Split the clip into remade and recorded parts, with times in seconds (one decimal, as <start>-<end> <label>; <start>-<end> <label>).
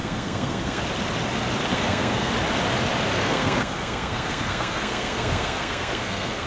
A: 0.0-0.8 remade; 0.8-1.7 recorded; 1.7-2.3 remade; 2.3-3.1 recorded; 3.1-6.5 remade